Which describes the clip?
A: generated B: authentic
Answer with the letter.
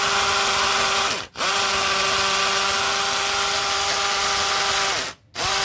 B